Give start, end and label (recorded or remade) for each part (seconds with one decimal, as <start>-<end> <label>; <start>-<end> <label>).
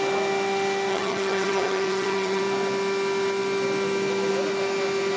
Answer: 0.0-0.9 recorded; 0.9-2.4 remade; 2.4-5.2 recorded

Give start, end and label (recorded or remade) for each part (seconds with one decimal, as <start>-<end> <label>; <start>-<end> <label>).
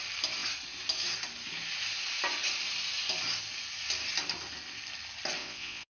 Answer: 0.0-5.4 recorded; 5.4-6.0 remade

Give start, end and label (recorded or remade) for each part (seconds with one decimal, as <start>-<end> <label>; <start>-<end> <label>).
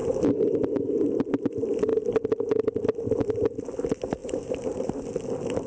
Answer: 0.0-0.7 remade; 0.7-4.2 recorded; 4.2-5.0 remade; 5.0-5.7 recorded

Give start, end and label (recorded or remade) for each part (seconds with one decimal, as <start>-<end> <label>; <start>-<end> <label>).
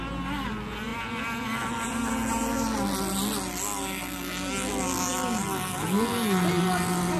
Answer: 0.0-7.2 recorded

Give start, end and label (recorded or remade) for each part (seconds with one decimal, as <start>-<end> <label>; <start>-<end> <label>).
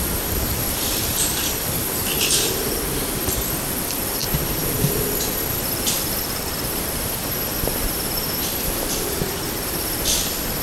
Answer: 0.0-10.6 remade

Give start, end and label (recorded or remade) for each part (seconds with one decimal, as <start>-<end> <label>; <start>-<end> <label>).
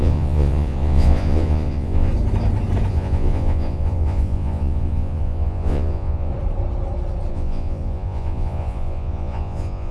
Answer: 0.0-2.1 remade; 2.1-2.9 recorded; 2.9-6.3 remade; 6.3-7.3 recorded; 7.3-9.9 remade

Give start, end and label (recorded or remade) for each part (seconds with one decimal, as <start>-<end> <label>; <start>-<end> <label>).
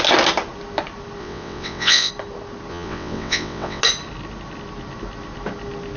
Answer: 0.0-1.2 recorded; 1.2-2.1 remade; 2.1-2.7 recorded; 2.7-3.8 remade; 3.8-6.0 recorded